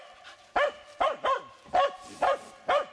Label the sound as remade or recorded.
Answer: recorded